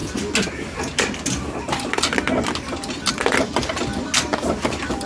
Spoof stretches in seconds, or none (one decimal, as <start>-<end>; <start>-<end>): none